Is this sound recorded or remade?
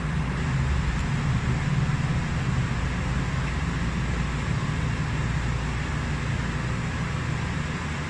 recorded